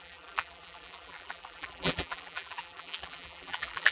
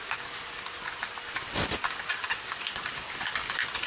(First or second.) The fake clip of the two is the first